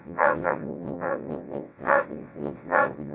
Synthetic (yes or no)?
yes